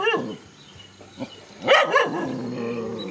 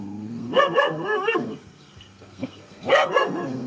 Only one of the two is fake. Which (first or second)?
second